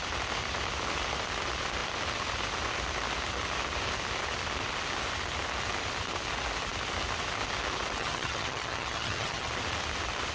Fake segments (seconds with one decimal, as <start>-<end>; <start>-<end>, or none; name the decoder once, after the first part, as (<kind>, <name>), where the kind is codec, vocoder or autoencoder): 8.0-9.5 (vocoder, HiFi-GAN)